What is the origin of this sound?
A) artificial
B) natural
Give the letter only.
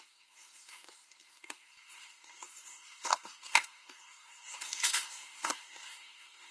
A